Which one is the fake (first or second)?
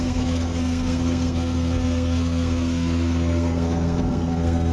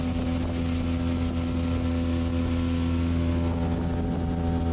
first